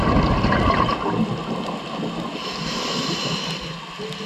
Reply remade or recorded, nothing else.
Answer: recorded